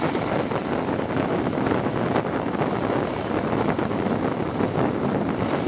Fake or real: real